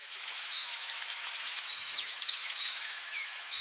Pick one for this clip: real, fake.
fake